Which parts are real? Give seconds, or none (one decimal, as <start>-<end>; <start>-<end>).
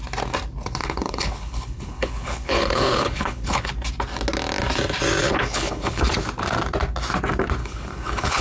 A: 0.0-0.8; 3.7-5.2; 6.1-7.6